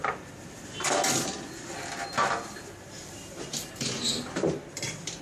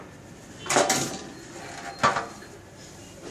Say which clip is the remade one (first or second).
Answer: first